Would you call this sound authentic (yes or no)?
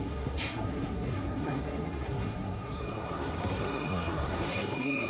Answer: no